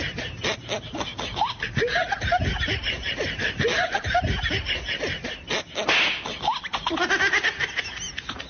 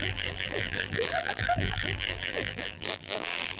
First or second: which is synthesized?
second